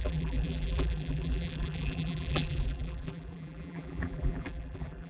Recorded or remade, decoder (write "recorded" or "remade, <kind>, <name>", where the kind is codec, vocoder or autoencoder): remade, vocoder, BigVGAN v2